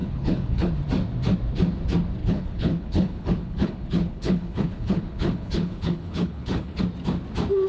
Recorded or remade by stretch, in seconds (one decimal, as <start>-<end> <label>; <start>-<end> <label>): 0.0-0.7 remade; 0.7-2.2 recorded; 2.2-6.8 remade; 6.8-7.7 recorded